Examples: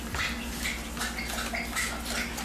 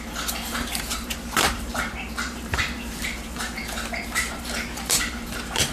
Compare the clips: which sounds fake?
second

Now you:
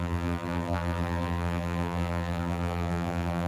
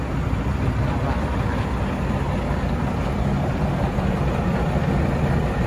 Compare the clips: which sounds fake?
first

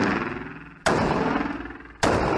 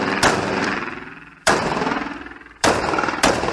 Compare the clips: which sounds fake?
second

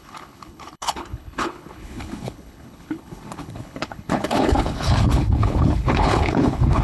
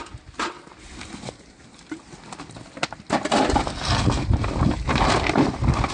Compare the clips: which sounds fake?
first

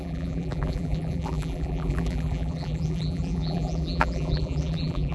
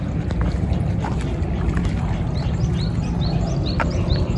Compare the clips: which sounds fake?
first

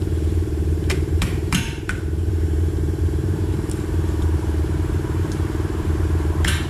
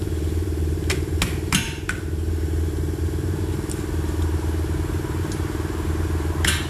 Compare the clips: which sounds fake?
first